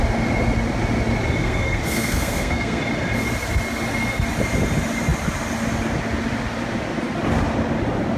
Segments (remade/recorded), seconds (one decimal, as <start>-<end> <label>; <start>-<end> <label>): 0.0-1.4 recorded; 1.4-2.8 remade; 2.8-8.2 recorded